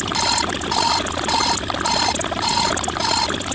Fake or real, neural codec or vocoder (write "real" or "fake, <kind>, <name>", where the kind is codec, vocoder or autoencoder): real